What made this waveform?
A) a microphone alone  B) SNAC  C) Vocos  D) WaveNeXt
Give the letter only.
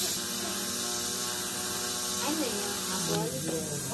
A